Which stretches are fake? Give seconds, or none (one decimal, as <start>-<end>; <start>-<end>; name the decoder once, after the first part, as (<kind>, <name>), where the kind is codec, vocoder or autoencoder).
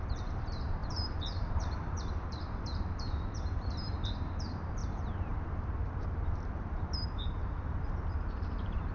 0.0-8.9 (vocoder, BigVGAN v2)